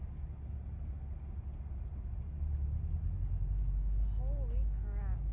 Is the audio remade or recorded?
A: recorded